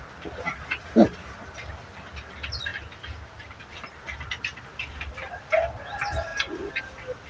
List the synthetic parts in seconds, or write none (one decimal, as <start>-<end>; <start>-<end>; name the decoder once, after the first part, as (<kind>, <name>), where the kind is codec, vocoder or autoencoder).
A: none